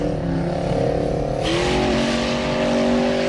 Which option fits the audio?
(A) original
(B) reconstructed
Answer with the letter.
A